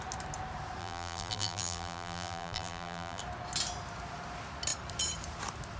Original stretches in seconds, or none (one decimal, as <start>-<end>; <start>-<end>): 0.0-0.8; 3.2-5.8